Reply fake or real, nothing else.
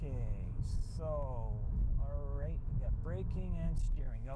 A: fake